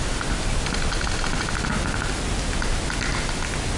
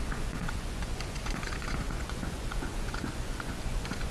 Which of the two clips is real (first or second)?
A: first